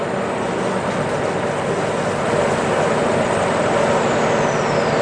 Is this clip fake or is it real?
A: real